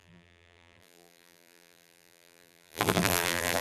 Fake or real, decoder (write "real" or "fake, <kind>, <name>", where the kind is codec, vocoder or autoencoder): fake, vocoder, BigVGAN v2